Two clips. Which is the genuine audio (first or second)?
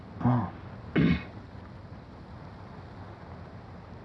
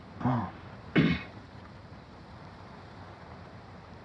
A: first